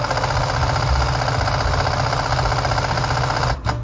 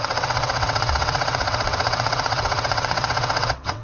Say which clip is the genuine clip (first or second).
first